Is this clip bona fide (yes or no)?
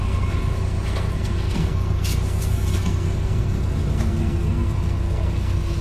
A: no